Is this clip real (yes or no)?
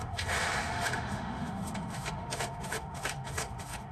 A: no